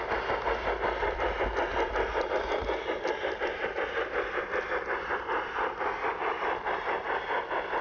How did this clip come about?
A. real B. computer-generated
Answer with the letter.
A